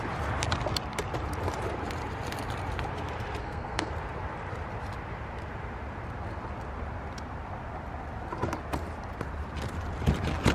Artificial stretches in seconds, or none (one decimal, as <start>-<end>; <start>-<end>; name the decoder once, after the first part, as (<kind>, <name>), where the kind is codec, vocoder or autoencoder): 3.4-3.9 (codec, SNAC)